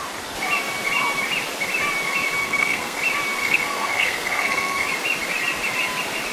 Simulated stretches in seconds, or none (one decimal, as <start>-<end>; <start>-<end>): 2.4-3.0; 3.4-4.9